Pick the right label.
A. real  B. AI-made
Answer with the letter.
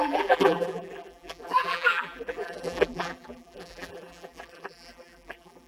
B